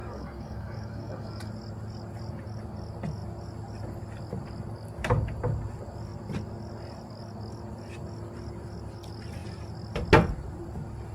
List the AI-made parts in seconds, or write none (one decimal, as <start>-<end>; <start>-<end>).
0.0-1.5